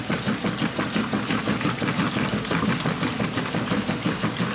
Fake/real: real